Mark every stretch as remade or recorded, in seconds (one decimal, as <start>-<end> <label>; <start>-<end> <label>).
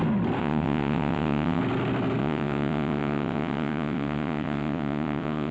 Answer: 0.0-0.4 recorded; 0.4-1.6 remade; 1.6-2.2 recorded; 2.2-5.5 remade